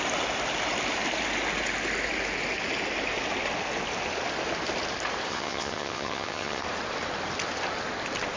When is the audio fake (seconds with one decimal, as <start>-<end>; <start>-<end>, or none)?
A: 5.3-6.6